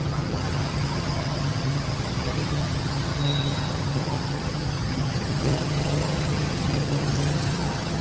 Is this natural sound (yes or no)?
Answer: no